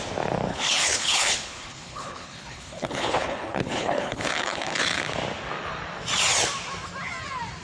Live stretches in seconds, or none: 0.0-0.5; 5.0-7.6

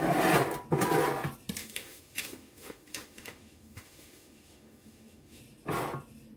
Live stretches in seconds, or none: 0.0-1.6; 5.4-6.4

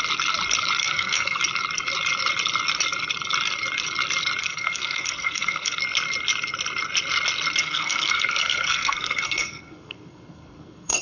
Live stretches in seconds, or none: 0.0-0.8; 1.4-4.4; 5.8-7.6

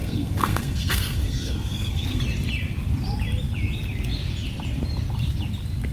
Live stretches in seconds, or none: 2.2-5.9

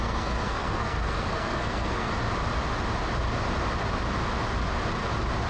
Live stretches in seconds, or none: 2.1-5.5

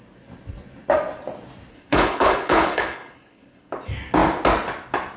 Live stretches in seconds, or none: 0.0-1.7; 3.7-5.2